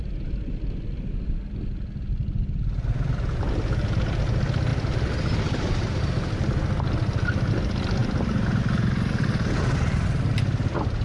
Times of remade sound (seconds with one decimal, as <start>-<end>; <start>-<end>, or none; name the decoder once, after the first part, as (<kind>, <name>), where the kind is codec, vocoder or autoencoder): none